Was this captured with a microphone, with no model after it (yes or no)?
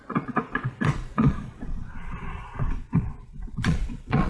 no